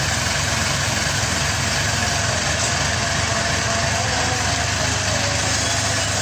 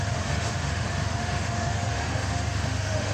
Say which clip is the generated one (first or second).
second